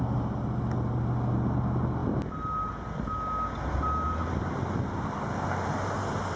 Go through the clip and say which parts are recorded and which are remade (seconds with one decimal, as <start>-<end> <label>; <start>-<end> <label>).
0.0-6.4 recorded